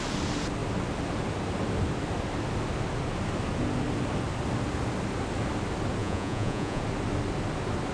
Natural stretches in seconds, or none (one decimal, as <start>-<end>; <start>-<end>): 0.0-6.0; 6.8-7.9

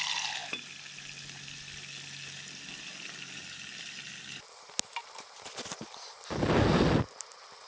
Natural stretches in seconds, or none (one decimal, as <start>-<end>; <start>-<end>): 0.0-7.7

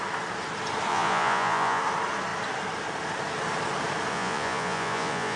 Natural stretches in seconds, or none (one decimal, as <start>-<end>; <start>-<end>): 0.0-0.9; 1.8-4.1

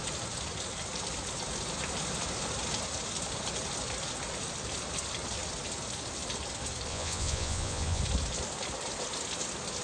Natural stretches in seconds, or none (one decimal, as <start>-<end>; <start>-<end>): 0.0-6.9; 8.0-9.8

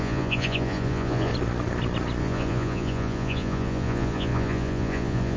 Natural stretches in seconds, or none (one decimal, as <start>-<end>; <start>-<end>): 1.3-2.2

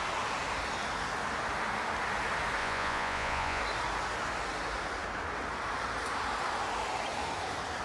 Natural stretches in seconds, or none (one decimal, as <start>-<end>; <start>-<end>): 0.0-2.6; 3.6-7.8

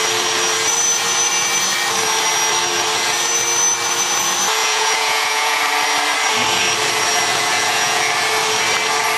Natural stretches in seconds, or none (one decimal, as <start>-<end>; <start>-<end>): 0.0-4.6; 5.6-7.3; 8.0-9.2